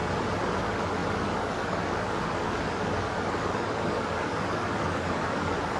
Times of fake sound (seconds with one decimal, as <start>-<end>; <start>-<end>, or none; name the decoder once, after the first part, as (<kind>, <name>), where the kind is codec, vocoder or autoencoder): 0.6-5.8 (codec, DAC)